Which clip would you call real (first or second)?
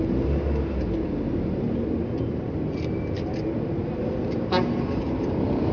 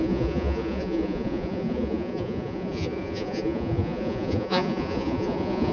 first